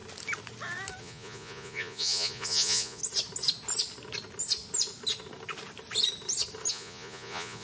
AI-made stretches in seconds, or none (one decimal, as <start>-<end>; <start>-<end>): 1.0-3.0; 6.7-7.6